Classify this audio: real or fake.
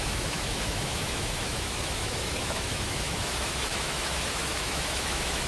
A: fake